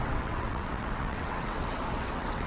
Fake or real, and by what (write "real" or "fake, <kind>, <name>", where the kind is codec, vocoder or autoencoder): fake, vocoder, WaveNeXt